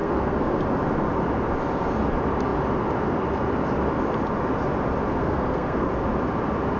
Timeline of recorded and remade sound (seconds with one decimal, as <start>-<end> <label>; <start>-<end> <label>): 0.0-0.6 remade; 0.6-5.2 recorded; 5.2-5.9 remade; 5.9-6.8 recorded